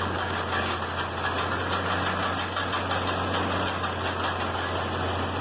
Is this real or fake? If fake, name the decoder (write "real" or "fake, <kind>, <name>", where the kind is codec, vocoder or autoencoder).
real